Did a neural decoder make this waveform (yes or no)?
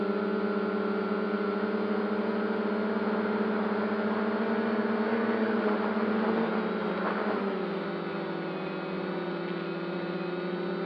no